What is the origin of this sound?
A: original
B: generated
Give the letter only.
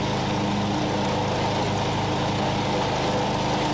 A